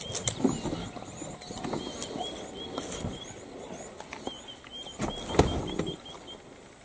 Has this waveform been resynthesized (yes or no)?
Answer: no